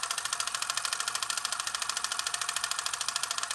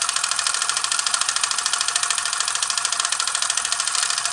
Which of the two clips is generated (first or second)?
second